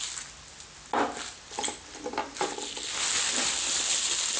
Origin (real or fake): real